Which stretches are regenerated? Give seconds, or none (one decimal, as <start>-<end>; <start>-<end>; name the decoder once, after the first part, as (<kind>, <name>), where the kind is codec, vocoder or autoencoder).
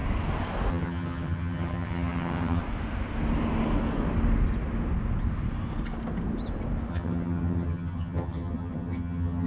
0.7-2.6 (vocoder, HiFi-GAN); 6.9-9.5